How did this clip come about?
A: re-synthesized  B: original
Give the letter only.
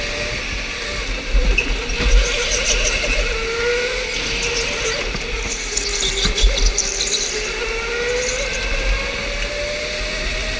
B